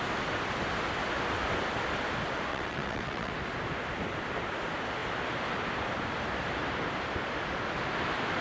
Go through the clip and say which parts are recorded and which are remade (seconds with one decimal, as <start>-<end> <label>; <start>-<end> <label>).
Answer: 0.0-2.5 recorded; 2.5-3.3 remade; 3.3-8.4 recorded